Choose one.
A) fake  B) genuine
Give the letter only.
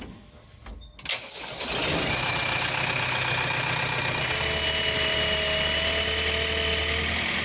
B